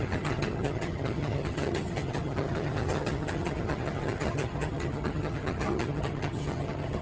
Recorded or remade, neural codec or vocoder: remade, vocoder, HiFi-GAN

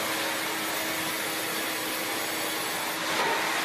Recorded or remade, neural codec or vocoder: recorded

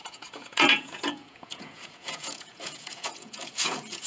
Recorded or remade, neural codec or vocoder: remade, vocoder, Vocos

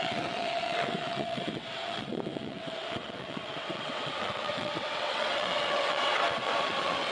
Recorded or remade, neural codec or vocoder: remade, vocoder, WaveNeXt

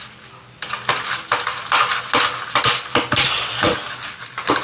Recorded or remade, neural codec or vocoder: recorded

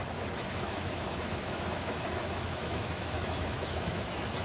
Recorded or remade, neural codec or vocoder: remade, autoencoder, DAC-VAE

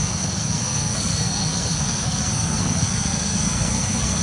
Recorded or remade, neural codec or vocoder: remade, codec, SNAC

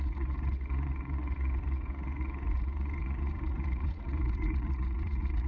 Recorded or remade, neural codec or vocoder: remade, vocoder, Vocos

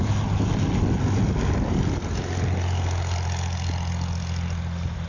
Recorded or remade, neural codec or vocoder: recorded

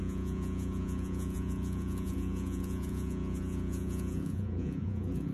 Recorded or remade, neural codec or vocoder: remade, vocoder, Vocos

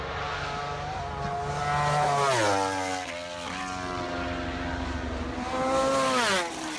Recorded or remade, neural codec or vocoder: recorded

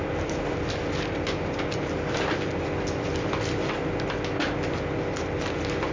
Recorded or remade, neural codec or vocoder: recorded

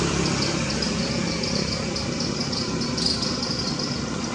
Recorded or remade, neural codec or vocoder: recorded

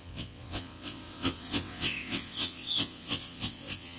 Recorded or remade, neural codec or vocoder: remade, vocoder, WaveNeXt